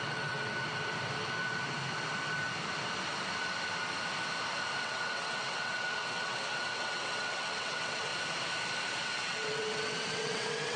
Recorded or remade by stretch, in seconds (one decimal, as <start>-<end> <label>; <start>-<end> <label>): 0.0-0.5 remade; 0.5-4.8 recorded; 4.8-8.1 remade; 8.1-9.0 recorded; 9.0-10.8 remade